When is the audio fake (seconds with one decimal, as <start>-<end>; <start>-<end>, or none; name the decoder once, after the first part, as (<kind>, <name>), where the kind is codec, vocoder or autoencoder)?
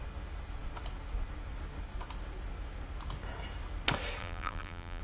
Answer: 4.2-5.0 (vocoder, BigVGAN v2)